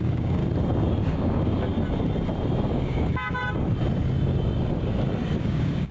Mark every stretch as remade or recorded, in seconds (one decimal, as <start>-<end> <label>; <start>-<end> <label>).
0.0-0.4 remade; 0.4-1.1 recorded; 1.1-1.7 remade; 1.7-2.7 recorded; 2.7-3.4 remade; 3.4-5.4 recorded; 5.4-5.9 remade